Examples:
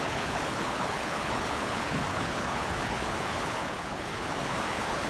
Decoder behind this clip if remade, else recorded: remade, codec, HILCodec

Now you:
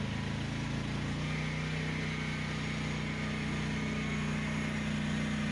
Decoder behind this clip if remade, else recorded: recorded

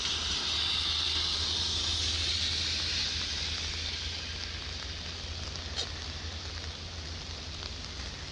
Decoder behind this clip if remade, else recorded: recorded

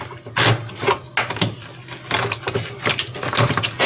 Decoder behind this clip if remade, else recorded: recorded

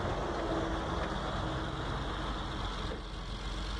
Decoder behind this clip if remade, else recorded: recorded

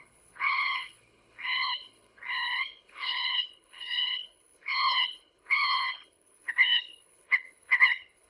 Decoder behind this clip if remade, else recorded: remade, codec, HILCodec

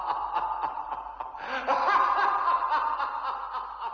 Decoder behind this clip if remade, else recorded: recorded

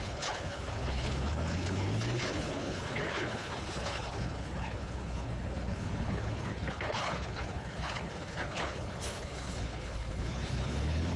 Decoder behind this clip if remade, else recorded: remade, codec, HILCodec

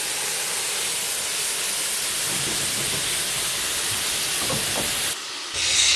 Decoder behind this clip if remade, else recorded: recorded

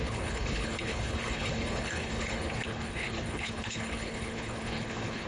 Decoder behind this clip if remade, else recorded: remade, codec, HILCodec